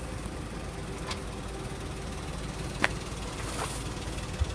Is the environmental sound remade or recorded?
recorded